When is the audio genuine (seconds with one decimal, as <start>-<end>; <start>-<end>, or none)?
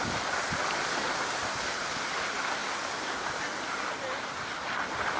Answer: 0.0-5.2